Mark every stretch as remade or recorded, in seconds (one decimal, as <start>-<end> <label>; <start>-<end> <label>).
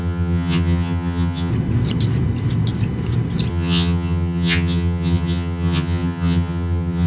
0.0-1.5 remade; 1.5-3.5 recorded; 3.5-7.1 remade